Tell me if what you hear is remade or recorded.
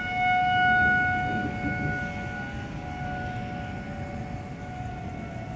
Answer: recorded